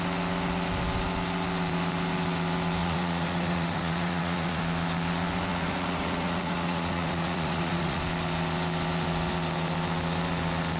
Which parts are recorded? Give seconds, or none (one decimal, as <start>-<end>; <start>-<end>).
0.0-2.8; 4.6-5.5; 8.0-10.8